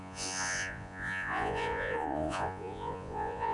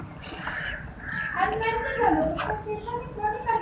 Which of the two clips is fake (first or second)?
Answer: first